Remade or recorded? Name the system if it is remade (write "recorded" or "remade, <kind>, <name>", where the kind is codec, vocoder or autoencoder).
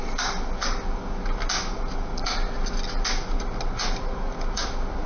recorded